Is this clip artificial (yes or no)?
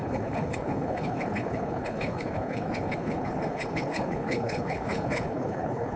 yes